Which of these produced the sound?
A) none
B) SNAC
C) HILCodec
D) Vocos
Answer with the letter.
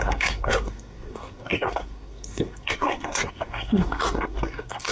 B